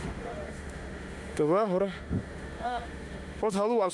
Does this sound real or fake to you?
fake